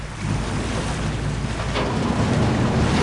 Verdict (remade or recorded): recorded